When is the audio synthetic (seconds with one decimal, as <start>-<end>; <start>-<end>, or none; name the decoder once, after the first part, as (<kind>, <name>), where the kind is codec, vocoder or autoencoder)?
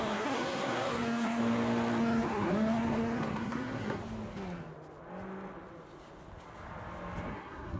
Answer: 0.0-1.4 (codec, SNAC); 2.0-4.0; 7.3-7.8